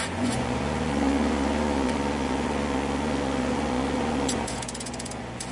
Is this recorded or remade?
remade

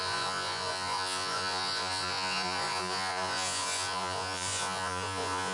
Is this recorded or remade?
remade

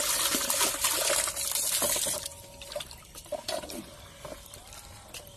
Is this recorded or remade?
recorded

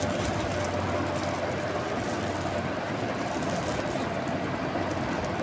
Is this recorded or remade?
recorded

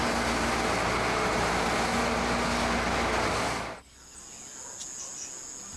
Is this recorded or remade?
recorded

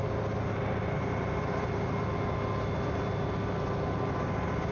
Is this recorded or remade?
recorded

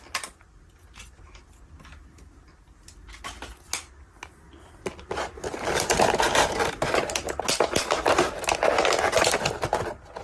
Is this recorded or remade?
recorded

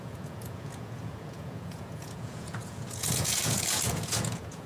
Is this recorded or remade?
remade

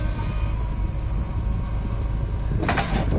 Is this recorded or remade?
recorded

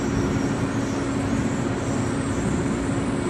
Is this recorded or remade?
recorded